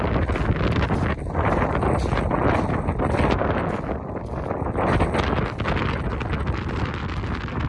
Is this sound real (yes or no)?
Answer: yes